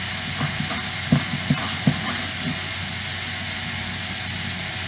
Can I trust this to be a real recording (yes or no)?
yes